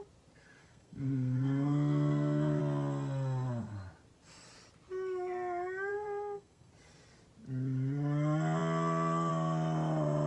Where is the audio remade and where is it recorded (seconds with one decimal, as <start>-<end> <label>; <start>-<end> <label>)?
0.0-0.6 recorded; 0.6-2.6 remade; 2.6-5.9 recorded; 5.9-6.7 remade; 6.7-10.3 recorded